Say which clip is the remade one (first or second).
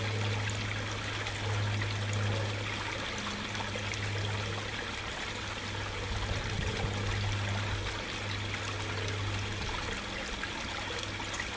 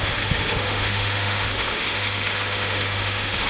second